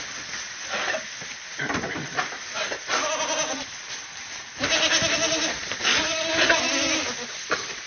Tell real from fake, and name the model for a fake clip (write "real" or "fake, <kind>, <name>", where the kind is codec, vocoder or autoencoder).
real